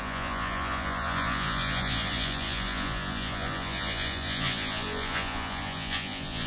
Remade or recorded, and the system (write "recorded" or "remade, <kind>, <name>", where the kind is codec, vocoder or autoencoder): remade, vocoder, Vocos